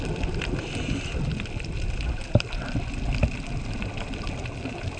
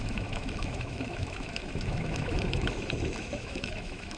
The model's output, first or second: second